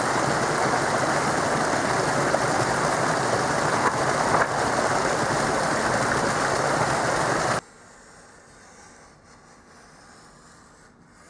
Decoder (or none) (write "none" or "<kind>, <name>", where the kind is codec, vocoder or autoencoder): none